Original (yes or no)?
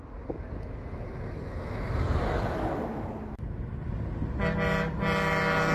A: yes